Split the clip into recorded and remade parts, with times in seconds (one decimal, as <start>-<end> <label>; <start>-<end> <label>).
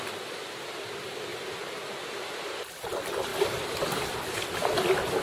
0.0-1.3 recorded; 1.3-2.3 remade; 2.3-3.3 recorded; 3.3-4.1 remade; 4.1-5.2 recorded